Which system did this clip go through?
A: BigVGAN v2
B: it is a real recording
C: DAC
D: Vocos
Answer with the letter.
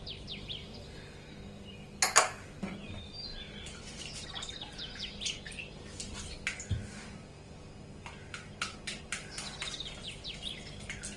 B